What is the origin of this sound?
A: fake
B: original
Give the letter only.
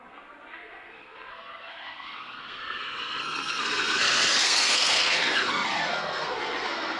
A